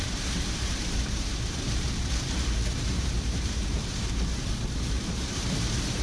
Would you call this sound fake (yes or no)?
yes